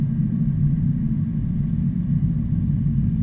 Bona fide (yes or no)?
yes